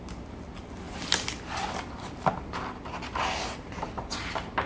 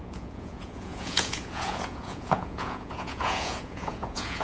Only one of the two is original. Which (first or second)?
first